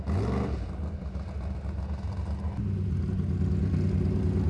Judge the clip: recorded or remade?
recorded